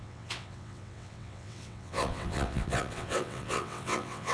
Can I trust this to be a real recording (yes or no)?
no